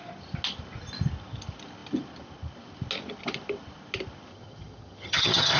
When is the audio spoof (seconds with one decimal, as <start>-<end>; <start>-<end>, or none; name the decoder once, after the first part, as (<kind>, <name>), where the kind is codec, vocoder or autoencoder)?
4.3-5.6 (vocoder, HiFi-GAN)